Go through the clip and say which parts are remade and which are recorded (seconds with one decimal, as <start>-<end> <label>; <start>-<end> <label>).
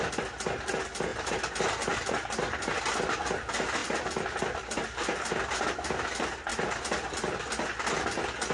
0.0-1.1 recorded; 1.1-1.9 remade; 1.9-3.8 recorded; 3.8-4.4 remade; 4.4-8.5 recorded